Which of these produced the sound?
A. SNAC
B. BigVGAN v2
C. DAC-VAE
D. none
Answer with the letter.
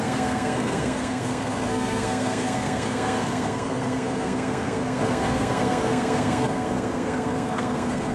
A